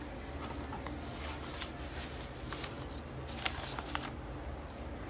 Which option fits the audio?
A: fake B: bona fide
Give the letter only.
B